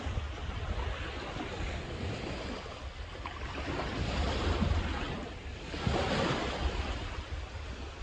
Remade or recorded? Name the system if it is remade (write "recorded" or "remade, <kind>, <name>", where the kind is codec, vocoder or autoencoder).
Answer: recorded